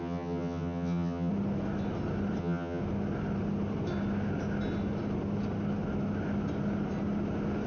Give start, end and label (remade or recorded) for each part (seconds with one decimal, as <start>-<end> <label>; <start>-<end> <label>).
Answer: 0.0-1.3 remade; 1.3-2.4 recorded; 2.4-2.8 remade; 2.8-7.7 recorded